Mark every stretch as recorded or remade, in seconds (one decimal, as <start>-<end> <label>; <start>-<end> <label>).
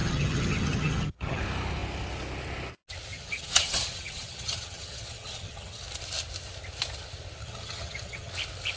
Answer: 0.0-1.4 remade; 1.4-3.1 recorded; 3.1-5.8 remade; 5.8-7.4 recorded; 7.4-8.3 remade; 8.3-8.8 recorded